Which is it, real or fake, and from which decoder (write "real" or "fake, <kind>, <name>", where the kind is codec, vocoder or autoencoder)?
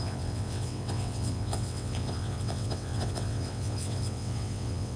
fake, vocoder, WaveNeXt